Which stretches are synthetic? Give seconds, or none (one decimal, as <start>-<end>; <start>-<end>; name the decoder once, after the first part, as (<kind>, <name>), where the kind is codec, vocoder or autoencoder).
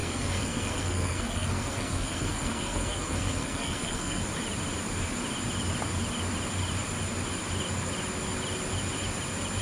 0.0-4.2 (codec, SNAC)